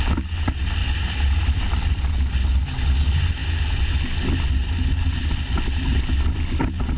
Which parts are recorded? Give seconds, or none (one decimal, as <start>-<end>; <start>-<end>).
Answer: 0.0-0.8; 2.0-7.0